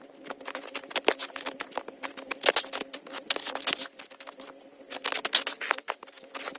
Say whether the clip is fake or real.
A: real